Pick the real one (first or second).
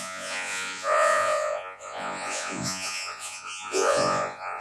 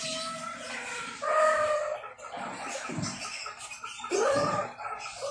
second